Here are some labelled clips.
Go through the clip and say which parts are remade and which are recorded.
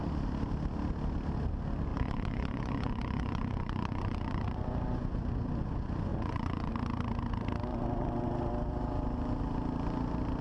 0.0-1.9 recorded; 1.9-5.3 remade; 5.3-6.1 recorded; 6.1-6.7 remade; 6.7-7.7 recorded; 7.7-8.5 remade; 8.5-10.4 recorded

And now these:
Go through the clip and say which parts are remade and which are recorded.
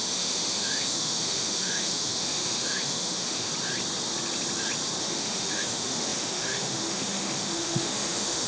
0.0-3.5 remade; 3.5-5.0 recorded; 5.0-8.5 remade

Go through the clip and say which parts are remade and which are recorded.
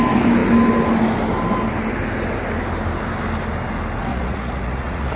0.0-4.1 recorded; 4.1-5.2 remade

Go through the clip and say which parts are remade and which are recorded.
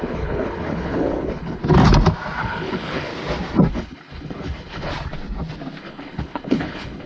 0.0-1.6 remade; 1.6-2.4 recorded; 2.4-3.1 remade; 3.1-3.7 recorded; 3.7-4.9 remade; 4.9-5.8 recorded; 5.8-7.1 remade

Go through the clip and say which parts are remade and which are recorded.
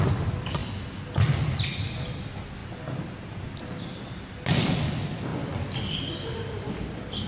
0.0-7.3 recorded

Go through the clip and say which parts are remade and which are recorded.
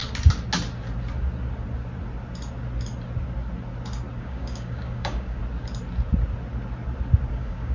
0.0-4.2 recorded; 4.2-5.4 remade; 5.4-7.3 recorded; 7.3-7.7 remade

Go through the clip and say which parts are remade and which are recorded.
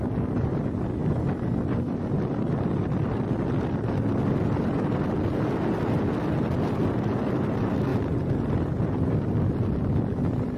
0.0-10.6 recorded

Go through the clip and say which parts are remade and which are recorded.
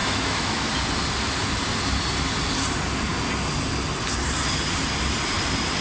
0.0-0.7 remade; 0.7-5.8 recorded